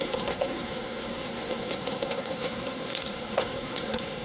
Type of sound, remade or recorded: remade